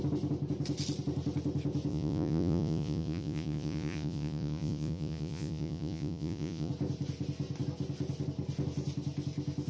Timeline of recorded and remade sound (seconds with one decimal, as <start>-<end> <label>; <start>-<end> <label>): 0.0-1.9 recorded; 1.9-6.7 remade; 6.7-9.7 recorded